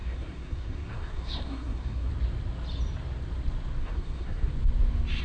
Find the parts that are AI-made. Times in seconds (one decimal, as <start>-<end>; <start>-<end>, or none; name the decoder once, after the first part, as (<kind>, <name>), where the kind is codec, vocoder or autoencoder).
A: 0.0-2.1 (codec, SNAC); 3.8-4.5